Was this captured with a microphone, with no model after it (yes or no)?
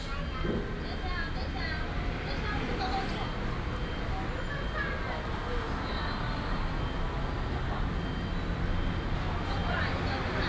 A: yes